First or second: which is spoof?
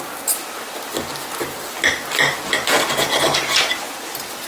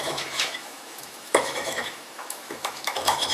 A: second